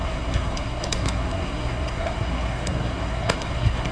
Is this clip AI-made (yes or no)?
yes